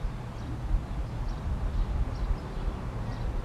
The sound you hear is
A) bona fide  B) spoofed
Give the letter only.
A